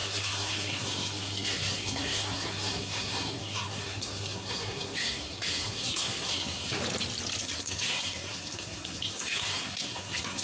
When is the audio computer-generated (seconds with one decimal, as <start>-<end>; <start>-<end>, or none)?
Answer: 0.0-6.8; 7.4-10.4